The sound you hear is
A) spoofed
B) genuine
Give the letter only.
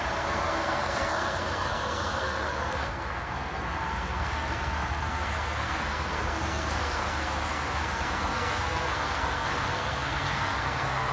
A